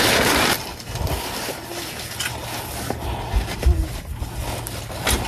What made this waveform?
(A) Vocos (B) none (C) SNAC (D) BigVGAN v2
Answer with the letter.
B